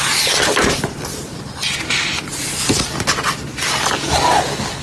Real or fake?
real